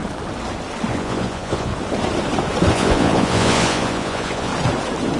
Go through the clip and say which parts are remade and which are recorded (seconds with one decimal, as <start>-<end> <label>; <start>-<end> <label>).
0.0-0.9 recorded; 0.9-1.7 remade; 1.7-2.7 recorded; 2.7-4.5 remade; 4.5-5.2 recorded